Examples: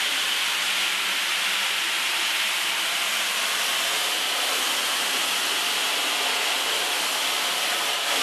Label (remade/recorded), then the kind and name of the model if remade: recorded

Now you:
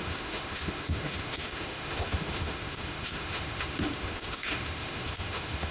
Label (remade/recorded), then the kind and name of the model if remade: remade, autoencoder, DAC-VAE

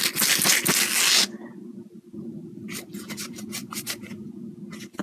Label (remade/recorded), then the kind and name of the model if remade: recorded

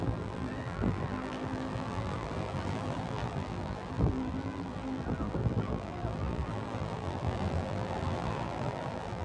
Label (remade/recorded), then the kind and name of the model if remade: remade, vocoder, BigVGAN v2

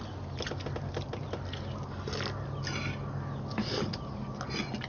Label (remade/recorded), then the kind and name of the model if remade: recorded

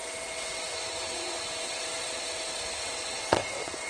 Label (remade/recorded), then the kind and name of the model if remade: remade, vocoder, WaveNeXt